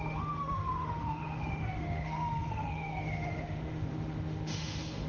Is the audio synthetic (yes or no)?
yes